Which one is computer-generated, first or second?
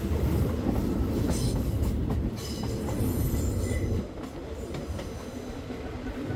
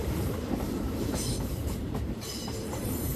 second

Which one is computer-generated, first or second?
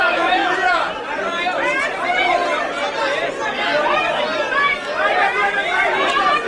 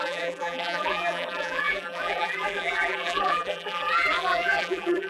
second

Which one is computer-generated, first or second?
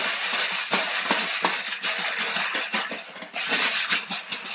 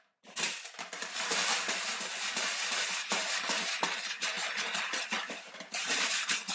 second